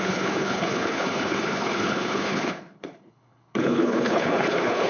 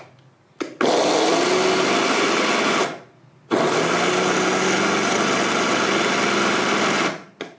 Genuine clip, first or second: second